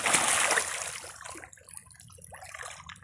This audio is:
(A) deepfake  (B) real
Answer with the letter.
B